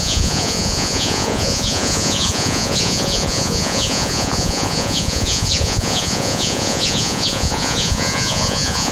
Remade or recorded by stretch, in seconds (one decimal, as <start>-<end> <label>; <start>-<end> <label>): 0.0-8.9 remade